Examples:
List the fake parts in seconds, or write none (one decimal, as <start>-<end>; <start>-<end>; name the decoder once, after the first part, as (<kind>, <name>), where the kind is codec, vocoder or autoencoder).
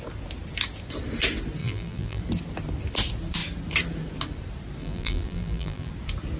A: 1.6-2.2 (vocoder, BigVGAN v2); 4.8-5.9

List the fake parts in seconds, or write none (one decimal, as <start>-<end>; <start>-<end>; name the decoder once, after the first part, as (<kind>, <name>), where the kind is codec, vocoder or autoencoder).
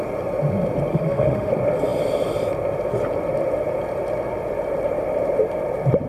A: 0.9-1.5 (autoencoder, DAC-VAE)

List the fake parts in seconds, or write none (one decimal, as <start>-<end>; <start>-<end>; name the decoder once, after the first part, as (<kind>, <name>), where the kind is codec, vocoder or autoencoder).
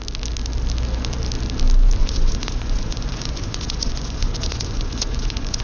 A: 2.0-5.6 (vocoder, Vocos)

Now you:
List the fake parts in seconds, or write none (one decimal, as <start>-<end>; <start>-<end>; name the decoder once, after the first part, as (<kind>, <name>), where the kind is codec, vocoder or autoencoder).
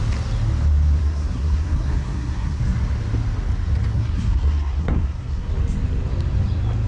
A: 1.0-2.6 (codec, SNAC); 3.9-5.5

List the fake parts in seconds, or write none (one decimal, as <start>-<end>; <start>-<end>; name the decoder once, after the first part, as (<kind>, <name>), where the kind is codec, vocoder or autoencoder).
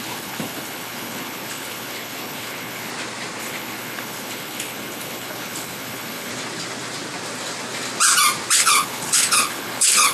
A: 0.0-2.9 (codec, HILCodec); 3.4-6.3; 8.6-10.1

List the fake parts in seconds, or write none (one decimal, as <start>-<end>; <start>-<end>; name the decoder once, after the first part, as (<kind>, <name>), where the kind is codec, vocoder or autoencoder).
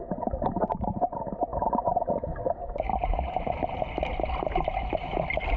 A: none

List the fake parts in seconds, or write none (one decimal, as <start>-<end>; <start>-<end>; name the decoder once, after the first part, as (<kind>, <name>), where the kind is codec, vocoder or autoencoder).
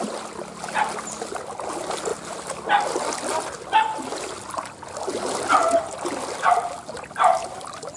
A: none